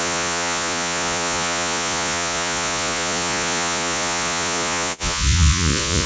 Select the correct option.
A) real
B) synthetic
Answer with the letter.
B